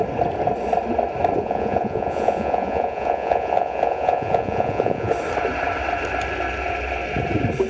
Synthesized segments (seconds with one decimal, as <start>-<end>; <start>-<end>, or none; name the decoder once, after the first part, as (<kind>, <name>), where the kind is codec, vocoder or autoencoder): 1.4-5.1 (vocoder, Vocos)